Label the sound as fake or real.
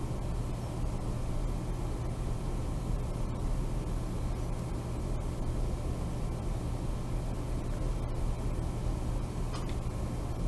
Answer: real